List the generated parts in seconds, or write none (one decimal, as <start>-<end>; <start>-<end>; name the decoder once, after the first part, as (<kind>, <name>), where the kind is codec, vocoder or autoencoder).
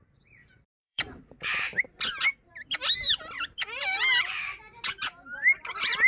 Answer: 0.4-2.0 (vocoder, BigVGAN v2); 3.8-4.6